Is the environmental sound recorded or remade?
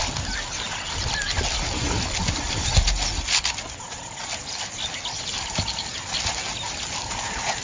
recorded